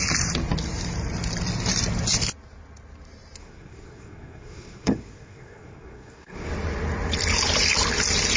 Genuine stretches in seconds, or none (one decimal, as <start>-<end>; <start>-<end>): 0.0-3.4; 6.5-8.4